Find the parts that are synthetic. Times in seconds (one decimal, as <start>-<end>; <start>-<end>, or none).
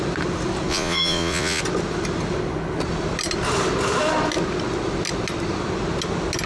0.7-1.6